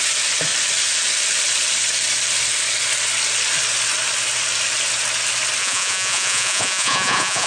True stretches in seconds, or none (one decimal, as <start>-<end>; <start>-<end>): 0.0-5.6